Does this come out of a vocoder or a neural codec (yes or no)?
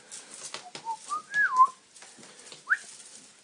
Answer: no